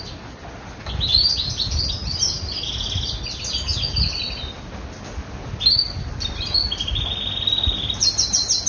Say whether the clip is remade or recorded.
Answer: recorded